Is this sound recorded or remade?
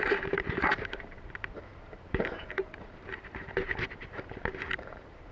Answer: remade